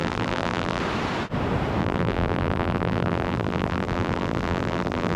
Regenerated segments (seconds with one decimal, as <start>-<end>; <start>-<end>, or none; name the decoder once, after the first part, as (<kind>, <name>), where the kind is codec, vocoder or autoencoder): 0.0-0.8 (vocoder, BigVGAN v2); 1.8-5.2